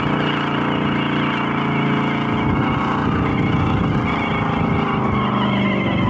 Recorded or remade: recorded